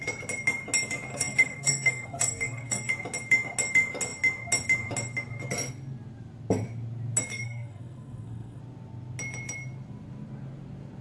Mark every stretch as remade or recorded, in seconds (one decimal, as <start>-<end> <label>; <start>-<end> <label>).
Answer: 0.0-1.1 recorded; 1.1-2.9 remade; 2.9-7.3 recorded; 7.3-8.6 remade; 8.6-11.0 recorded